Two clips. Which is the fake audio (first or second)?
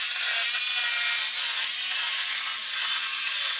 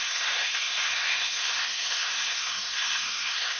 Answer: second